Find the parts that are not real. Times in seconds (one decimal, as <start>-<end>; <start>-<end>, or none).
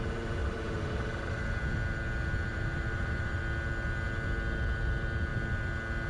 0.4-1.3; 2.5-3.4